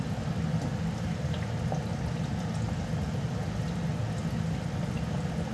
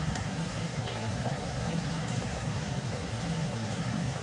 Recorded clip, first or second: first